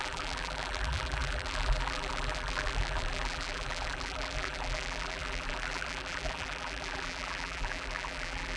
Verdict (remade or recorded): remade